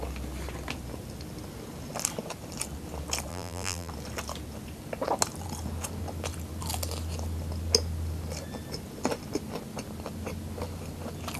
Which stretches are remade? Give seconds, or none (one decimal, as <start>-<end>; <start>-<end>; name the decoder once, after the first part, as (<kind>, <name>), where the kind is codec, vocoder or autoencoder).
3.3-3.9 (vocoder, BigVGAN v2)